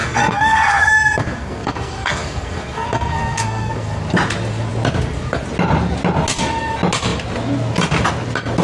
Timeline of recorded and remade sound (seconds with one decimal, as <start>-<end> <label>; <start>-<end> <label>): 0.0-4.0 remade; 4.0-8.6 recorded